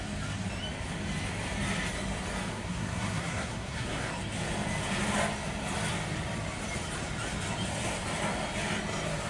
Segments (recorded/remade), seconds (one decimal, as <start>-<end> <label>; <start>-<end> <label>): 0.0-2.5 recorded; 2.5-4.1 remade; 4.1-9.3 recorded